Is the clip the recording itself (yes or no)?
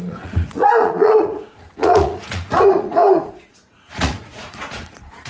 no